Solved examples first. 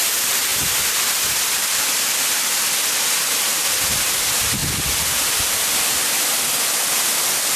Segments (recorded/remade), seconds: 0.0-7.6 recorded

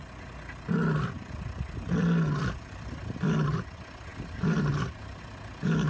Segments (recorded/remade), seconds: 0.0-5.9 recorded

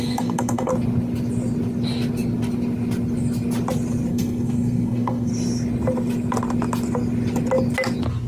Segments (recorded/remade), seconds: 0.0-0.7 remade; 0.7-4.1 recorded; 4.1-5.3 remade; 5.3-8.3 recorded

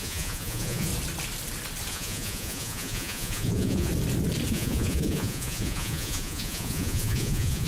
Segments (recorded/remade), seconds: 0.0-0.9 remade; 0.9-1.9 recorded; 1.9-3.9 remade; 3.9-4.5 recorded; 4.5-7.7 remade

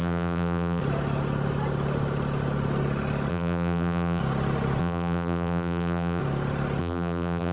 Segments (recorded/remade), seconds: 0.0-0.8 remade; 0.8-3.3 recorded; 3.3-4.2 remade; 4.2-4.8 recorded; 4.8-6.2 remade; 6.2-6.8 recorded; 6.8-7.5 remade